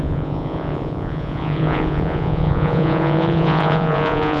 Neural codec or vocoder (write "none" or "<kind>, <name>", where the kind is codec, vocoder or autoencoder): vocoder, Vocos